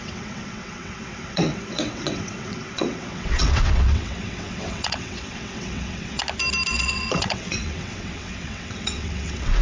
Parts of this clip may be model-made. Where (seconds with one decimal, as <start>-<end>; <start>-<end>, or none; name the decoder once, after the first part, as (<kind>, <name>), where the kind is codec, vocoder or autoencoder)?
0.0-6.2 (vocoder, WaveNeXt); 6.7-9.6